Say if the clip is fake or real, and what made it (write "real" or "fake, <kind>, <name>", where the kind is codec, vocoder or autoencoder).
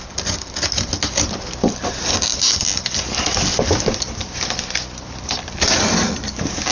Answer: real